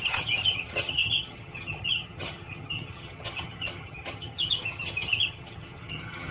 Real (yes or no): no